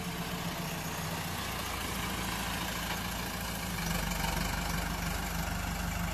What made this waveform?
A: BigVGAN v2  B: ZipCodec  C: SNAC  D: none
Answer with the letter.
D